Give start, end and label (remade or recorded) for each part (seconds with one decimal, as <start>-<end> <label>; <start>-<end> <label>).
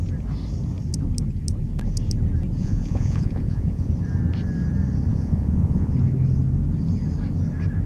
0.0-2.6 recorded; 2.6-3.9 remade; 3.9-5.1 recorded; 5.1-5.9 remade; 5.9-7.9 recorded